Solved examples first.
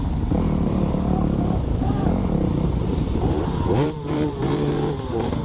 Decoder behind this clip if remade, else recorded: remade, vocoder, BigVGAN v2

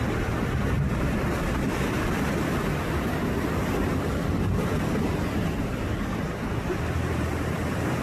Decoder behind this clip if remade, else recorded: remade, vocoder, BigVGAN v2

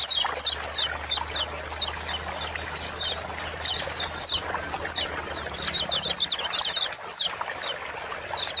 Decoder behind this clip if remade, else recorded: recorded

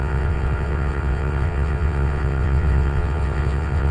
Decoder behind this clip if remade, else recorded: remade, vocoder, WaveNeXt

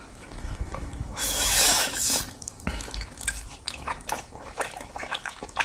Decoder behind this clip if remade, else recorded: remade, autoencoder, DAC-VAE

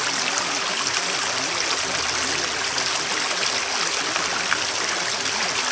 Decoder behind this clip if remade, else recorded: recorded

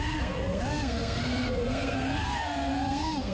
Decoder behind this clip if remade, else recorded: remade, codec, SNAC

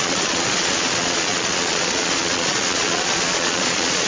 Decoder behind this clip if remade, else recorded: remade, vocoder, Vocos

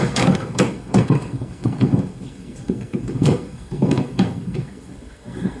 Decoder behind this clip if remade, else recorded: remade, codec, SNAC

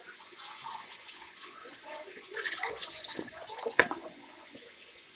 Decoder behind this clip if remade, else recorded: remade, vocoder, Vocos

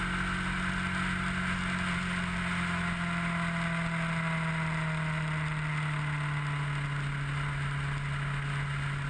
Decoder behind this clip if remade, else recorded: recorded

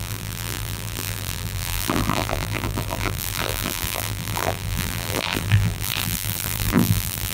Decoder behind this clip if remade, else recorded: remade, vocoder, BigVGAN v2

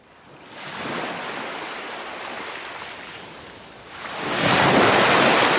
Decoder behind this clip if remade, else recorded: recorded